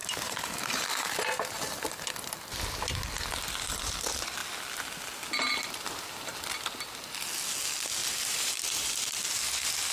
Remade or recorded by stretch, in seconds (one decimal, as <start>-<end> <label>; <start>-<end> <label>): 0.0-0.9 remade; 0.9-8.0 recorded; 8.0-9.0 remade; 9.0-9.9 recorded